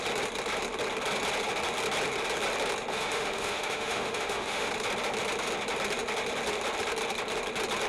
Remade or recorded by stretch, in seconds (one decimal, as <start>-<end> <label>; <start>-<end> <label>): 0.0-2.9 recorded; 2.9-4.7 remade; 4.7-7.9 recorded